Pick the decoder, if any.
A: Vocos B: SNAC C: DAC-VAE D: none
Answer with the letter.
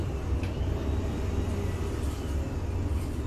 D